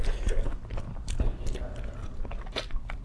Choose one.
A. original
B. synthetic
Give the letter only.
A